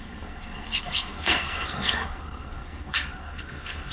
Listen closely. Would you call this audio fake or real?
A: fake